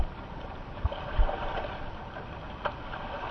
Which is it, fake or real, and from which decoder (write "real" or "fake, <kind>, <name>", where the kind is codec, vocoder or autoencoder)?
real